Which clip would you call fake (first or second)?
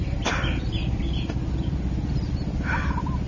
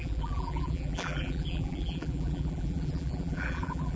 second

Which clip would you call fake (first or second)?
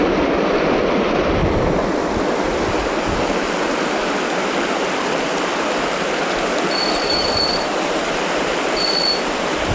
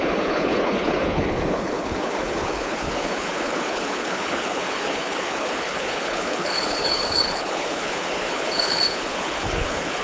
second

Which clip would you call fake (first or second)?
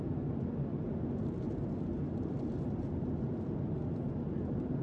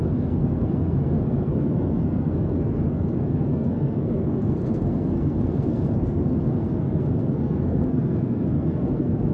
second